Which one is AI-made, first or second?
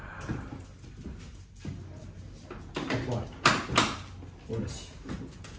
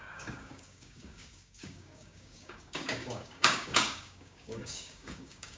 second